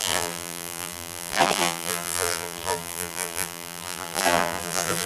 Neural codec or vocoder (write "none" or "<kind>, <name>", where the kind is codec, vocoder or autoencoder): vocoder, BigVGAN v2